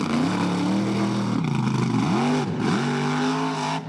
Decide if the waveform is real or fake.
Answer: real